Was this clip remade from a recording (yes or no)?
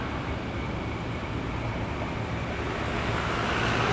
no